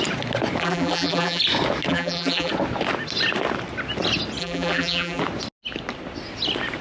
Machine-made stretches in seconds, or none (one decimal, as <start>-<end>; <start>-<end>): 0.6-1.4; 1.9-2.5; 4.4-5.2